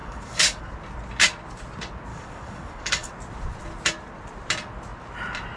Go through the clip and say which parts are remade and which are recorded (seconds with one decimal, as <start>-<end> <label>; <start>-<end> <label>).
0.0-0.6 remade; 0.6-2.1 recorded; 2.1-3.1 remade; 3.1-5.6 recorded